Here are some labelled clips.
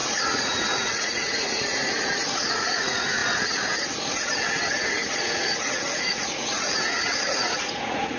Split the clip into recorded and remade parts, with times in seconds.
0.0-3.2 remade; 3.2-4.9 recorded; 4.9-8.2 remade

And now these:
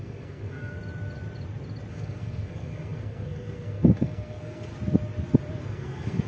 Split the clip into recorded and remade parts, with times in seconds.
0.0-0.8 remade; 0.8-1.9 recorded; 1.9-4.7 remade; 4.7-5.6 recorded; 5.6-6.3 remade